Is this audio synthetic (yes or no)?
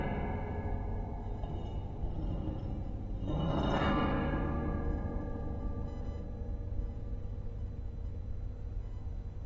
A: no